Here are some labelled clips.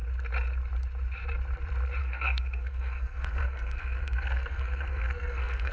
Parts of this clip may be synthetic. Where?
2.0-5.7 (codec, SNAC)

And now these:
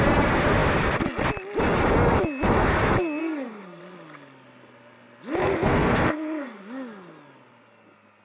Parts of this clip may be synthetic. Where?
3.2-3.8 (codec, SNAC); 5.4-6.6

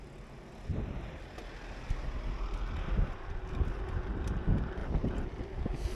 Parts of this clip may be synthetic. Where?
0.7-1.4 (vocoder, BigVGAN v2)